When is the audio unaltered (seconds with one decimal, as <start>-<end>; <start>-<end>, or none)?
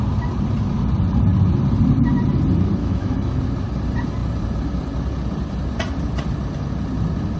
0.0-2.8; 3.4-7.4